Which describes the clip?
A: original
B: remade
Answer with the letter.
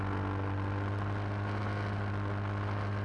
A